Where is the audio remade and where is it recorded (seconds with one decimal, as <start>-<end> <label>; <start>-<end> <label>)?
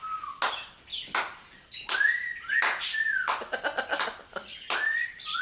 0.0-5.4 recorded